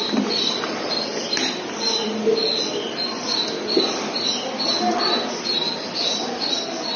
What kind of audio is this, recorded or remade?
recorded